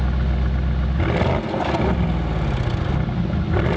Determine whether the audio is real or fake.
real